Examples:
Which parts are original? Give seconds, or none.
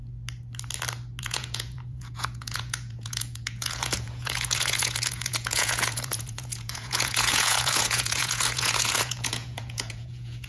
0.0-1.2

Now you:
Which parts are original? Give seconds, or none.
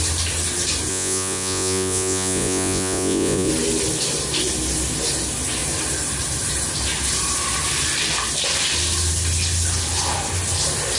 0.0-0.9; 3.5-11.0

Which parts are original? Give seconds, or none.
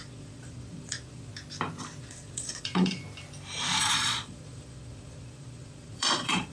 1.3-2.0; 3.0-3.8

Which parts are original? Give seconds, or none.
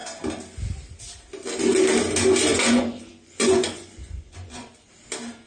0.0-2.5; 4.9-5.5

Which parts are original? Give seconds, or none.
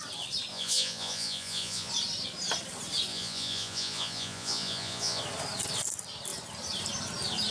0.0-0.5; 1.9-3.1; 5.2-7.5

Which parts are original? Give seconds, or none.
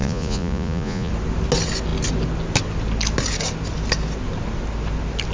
1.1-5.3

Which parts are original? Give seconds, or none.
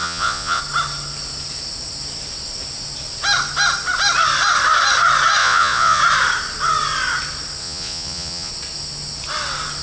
0.6-5.4; 6.0-7.6; 8.5-9.8